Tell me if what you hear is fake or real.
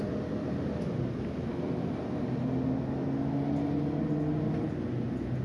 real